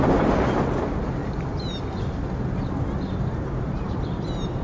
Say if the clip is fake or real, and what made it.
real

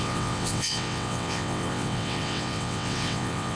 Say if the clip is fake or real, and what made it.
fake, vocoder, WaveNeXt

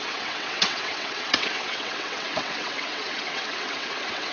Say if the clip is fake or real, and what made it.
fake, vocoder, WaveNeXt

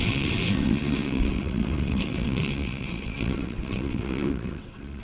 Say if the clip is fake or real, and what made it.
fake, vocoder, WaveNeXt